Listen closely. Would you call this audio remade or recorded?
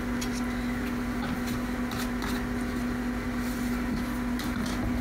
recorded